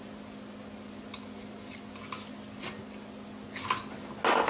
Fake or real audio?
real